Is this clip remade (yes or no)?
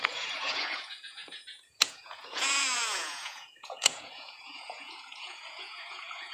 yes